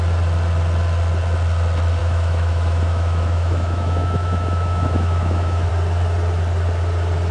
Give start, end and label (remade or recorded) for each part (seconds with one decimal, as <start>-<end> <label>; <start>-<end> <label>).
0.0-2.0 recorded; 2.0-5.7 remade; 5.7-7.3 recorded